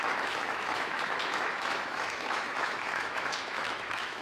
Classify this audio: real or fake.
fake